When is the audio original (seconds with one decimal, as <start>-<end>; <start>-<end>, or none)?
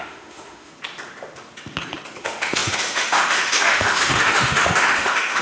0.7-2.2